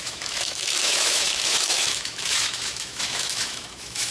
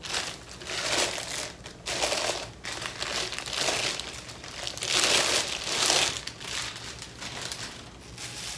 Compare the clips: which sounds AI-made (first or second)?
first